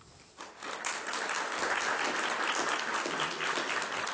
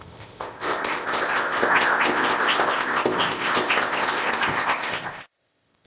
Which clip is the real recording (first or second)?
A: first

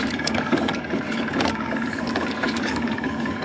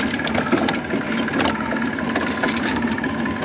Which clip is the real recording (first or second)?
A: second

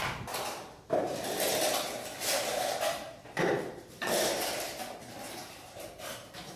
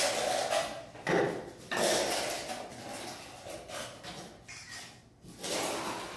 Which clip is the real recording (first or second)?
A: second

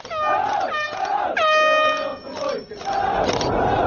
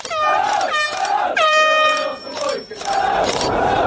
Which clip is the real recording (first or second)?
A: first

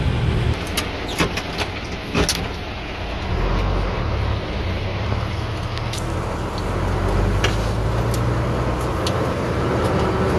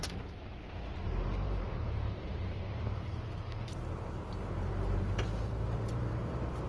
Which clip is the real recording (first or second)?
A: first